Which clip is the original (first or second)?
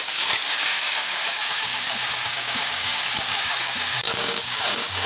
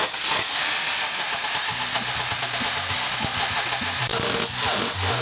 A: second